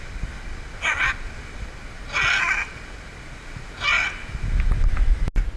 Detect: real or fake real